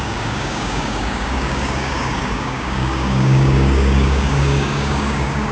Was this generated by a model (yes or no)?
yes